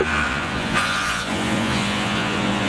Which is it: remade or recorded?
remade